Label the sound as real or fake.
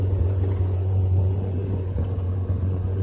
fake